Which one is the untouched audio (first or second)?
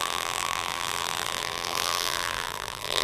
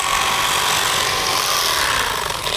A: second